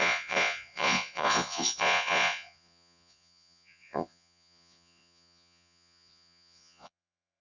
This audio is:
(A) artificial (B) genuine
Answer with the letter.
A